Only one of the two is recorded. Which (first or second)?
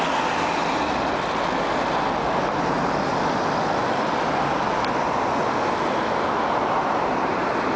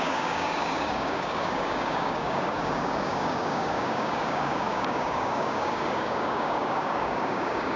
first